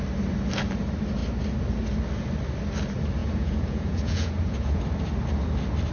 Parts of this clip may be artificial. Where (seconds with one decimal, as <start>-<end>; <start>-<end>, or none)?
3.2-4.8